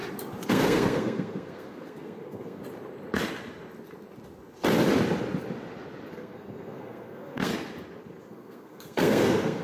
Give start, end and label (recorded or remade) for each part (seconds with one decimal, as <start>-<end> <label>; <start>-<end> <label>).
0.0-0.5 recorded; 0.5-2.6 remade; 2.6-6.1 recorded; 6.1-7.5 remade; 7.5-8.2 recorded; 8.2-9.6 remade

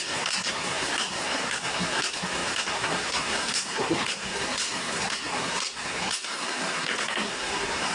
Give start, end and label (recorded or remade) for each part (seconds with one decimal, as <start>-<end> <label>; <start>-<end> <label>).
0.0-7.9 remade

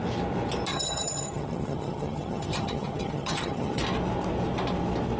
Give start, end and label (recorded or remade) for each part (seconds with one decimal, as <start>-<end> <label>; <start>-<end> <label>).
0.0-0.7 recorded; 0.7-3.8 remade; 3.8-5.2 recorded

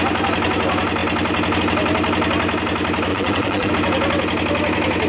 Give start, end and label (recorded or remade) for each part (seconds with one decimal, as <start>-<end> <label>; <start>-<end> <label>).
0.0-3.1 recorded; 3.1-3.7 remade; 3.7-5.1 recorded

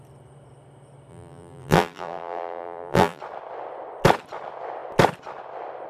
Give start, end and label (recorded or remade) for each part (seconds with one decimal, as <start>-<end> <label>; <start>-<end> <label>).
0.0-1.1 recorded; 1.1-3.2 remade; 3.2-5.9 recorded